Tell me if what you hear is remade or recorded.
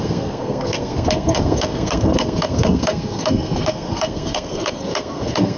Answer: remade